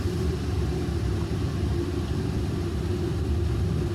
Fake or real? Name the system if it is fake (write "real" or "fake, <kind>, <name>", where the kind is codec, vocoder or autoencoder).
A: real